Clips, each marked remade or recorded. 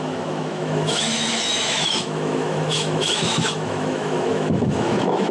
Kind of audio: remade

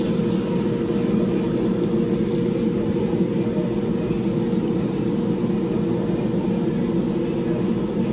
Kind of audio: recorded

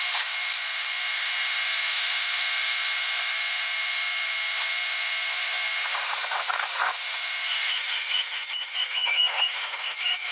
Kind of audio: remade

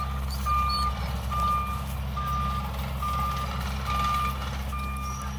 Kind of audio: recorded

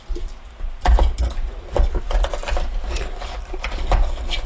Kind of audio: recorded